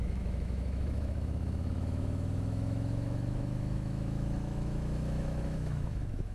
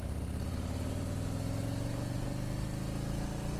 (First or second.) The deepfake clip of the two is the first